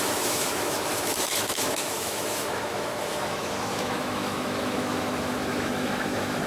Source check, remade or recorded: remade